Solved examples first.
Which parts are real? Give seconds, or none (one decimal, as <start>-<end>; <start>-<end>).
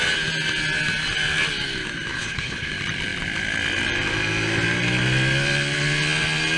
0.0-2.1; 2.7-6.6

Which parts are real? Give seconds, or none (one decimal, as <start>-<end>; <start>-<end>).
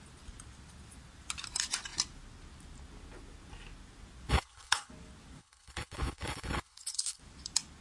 0.0-4.3; 4.9-5.4; 7.2-7.8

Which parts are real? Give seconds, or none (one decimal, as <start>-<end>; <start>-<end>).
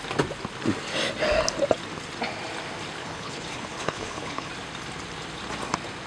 0.0-3.0; 4.5-6.1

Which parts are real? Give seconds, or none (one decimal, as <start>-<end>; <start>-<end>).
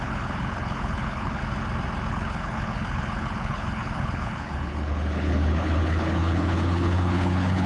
1.4-2.1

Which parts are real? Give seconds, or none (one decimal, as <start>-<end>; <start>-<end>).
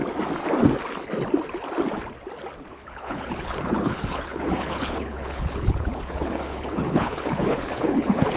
0.0-2.7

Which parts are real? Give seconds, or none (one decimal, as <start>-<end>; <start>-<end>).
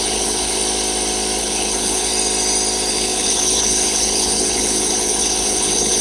0.6-1.4; 2.1-2.9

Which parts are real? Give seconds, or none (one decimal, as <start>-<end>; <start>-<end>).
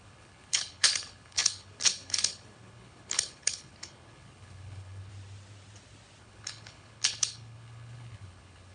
5.1-6.2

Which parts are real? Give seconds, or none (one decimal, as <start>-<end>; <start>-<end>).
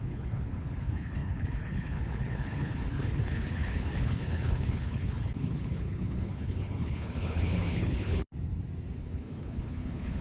8.4-9.0